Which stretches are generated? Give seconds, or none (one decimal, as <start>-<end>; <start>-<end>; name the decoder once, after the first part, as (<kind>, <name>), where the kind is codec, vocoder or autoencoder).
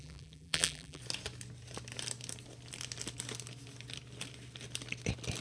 0.0-1.0 (vocoder, BigVGAN v2)